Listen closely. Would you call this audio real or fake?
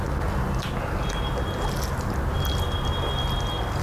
real